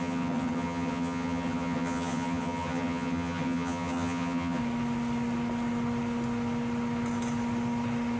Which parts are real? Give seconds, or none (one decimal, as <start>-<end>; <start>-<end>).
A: 4.6-8.2